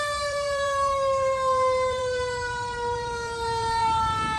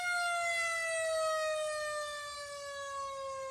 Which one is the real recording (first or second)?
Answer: second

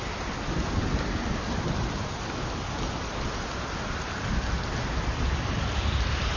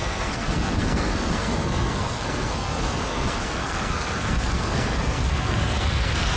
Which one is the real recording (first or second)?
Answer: first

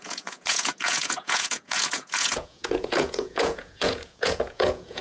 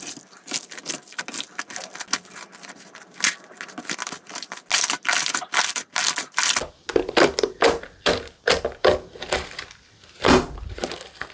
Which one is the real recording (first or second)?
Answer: second